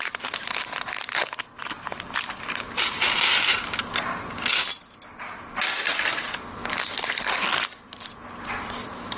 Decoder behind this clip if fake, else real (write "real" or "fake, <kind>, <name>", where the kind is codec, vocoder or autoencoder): real